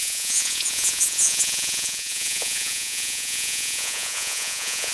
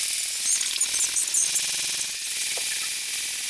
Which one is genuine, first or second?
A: second